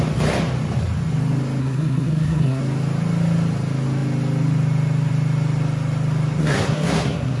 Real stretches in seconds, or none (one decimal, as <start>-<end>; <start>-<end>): 0.0-1.6; 2.6-6.4